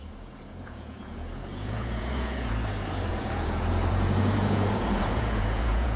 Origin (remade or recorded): remade